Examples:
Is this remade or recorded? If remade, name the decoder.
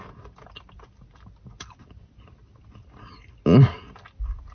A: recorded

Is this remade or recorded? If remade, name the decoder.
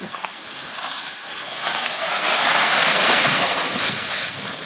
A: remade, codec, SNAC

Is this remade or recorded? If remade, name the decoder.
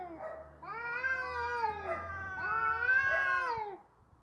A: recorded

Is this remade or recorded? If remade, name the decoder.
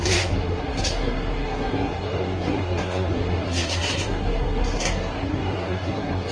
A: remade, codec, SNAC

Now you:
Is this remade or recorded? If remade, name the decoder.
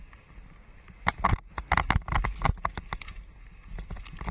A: recorded